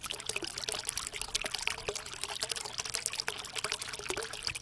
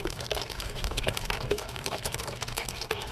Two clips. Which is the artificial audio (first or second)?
second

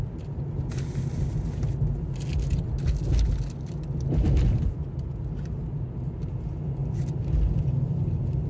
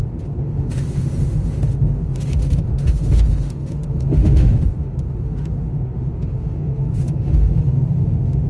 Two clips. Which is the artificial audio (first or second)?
second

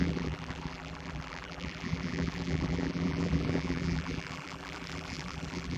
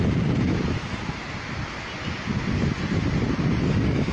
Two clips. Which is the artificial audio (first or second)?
first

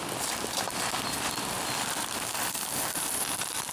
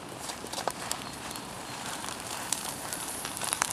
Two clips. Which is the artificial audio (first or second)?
second